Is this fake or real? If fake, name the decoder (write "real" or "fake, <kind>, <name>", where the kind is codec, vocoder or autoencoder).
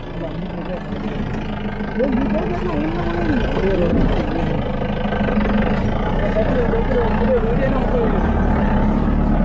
real